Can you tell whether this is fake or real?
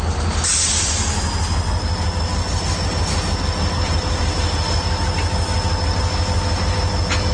real